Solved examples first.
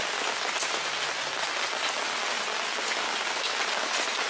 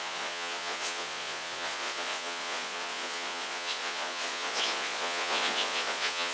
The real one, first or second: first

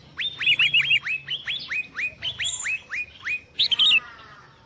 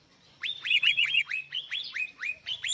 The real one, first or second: first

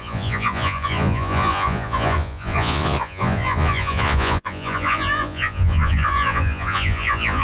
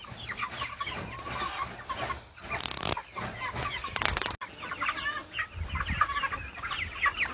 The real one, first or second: second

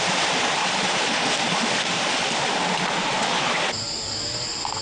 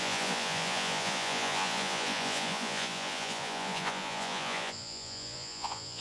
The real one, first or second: first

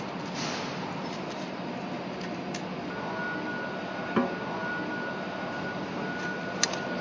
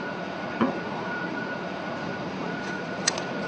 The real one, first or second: first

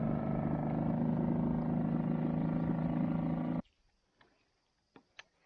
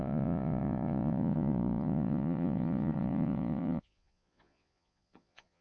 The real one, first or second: first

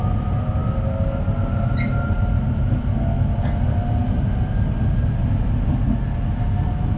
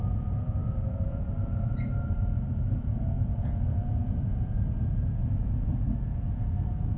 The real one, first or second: first